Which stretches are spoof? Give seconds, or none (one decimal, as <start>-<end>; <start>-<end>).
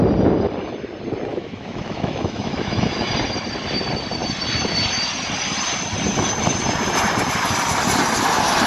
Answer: 1.3-3.1